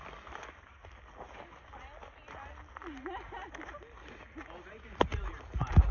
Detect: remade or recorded recorded